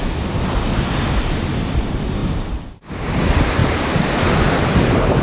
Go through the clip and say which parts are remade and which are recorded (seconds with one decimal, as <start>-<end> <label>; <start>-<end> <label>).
0.0-5.2 recorded